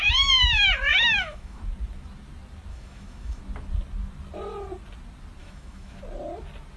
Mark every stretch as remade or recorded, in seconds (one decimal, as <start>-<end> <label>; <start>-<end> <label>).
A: 0.0-0.9 recorded; 0.9-1.6 remade; 1.6-2.7 recorded; 2.7-3.4 remade; 3.4-5.4 recorded; 5.4-6.0 remade; 6.0-6.8 recorded